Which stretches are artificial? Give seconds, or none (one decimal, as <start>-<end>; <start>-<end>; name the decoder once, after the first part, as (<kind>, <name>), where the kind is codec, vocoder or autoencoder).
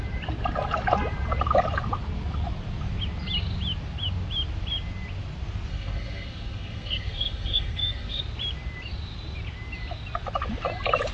5.7-8.2 (codec, SNAC)